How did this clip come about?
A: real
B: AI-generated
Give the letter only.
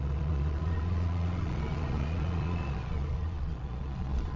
B